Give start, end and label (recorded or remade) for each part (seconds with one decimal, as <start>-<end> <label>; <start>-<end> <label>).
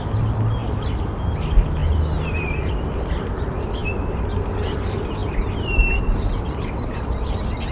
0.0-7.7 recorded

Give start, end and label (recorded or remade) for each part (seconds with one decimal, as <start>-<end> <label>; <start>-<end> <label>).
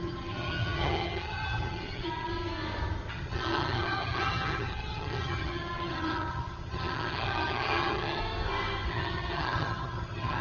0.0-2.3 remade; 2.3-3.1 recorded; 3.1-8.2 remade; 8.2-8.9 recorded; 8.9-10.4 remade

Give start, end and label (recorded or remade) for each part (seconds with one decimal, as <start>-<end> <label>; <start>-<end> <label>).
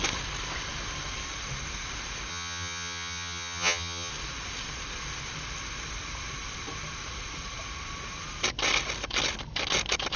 0.0-2.3 recorded; 2.3-4.1 remade; 4.1-10.2 recorded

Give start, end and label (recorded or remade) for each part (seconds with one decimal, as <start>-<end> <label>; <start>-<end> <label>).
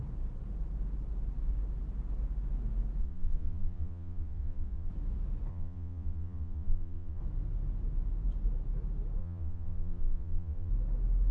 0.0-3.0 recorded; 3.0-4.9 remade; 4.9-5.5 recorded; 5.5-7.2 remade; 7.2-9.2 recorded; 9.2-10.7 remade; 10.7-11.3 recorded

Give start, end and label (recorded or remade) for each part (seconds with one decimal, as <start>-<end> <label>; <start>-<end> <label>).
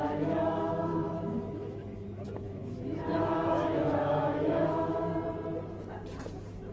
0.0-5.1 remade; 5.1-6.7 recorded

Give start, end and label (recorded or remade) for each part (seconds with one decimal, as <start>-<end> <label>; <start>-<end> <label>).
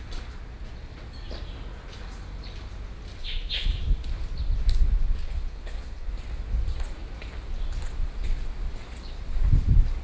0.0-3.2 recorded; 3.2-3.7 remade; 3.7-5.2 recorded; 5.2-6.1 remade; 6.1-10.0 recorded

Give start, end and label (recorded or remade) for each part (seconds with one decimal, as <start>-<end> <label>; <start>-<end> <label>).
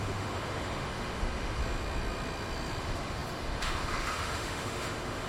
0.0-1.6 remade; 1.6-2.8 recorded; 2.8-5.3 remade